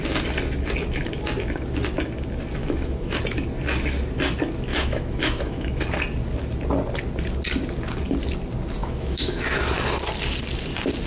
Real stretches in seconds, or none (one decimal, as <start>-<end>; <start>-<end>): 0.0-2.6; 3.2-4.7; 5.8-8.8; 9.6-11.1